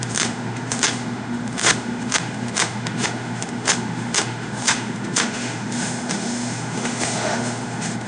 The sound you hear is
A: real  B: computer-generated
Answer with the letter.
B